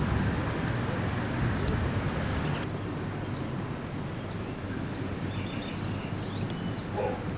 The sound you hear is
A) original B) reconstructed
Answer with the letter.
A